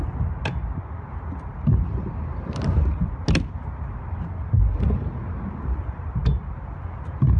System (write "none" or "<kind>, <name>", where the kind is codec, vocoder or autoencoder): none